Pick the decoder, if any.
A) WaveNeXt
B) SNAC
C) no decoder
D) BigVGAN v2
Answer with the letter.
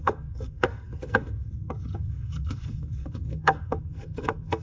B